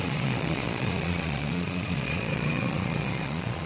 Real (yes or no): no